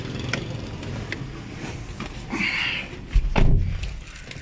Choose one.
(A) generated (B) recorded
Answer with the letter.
B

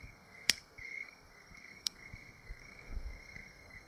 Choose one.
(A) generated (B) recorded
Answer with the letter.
A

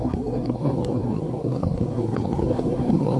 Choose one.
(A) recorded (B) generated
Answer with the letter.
B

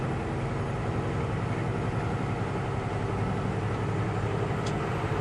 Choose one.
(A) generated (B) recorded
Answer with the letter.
B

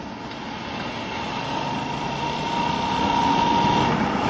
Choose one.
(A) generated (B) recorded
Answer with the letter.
B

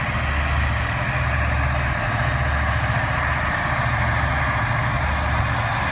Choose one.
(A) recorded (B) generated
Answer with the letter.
A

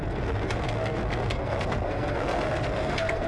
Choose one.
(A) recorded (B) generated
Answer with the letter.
B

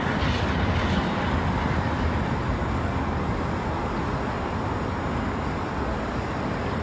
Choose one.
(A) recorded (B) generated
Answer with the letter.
A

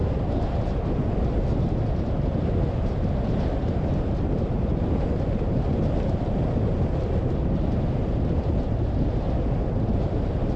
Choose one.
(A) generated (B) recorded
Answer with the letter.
B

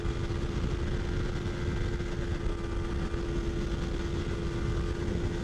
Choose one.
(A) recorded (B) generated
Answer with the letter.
A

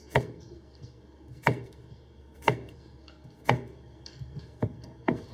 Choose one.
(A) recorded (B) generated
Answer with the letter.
B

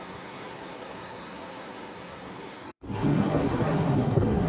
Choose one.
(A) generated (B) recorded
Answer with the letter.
A